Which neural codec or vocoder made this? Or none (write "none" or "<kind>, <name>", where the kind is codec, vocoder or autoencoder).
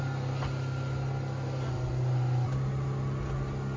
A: none